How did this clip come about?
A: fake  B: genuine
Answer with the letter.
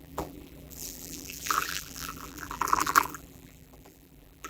A